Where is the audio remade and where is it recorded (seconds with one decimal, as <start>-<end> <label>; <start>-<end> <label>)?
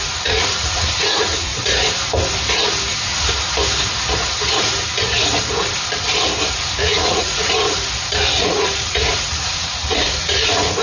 0.0-1.5 remade; 1.5-6.8 recorded; 6.8-7.6 remade; 7.6-8.4 recorded; 8.4-10.8 remade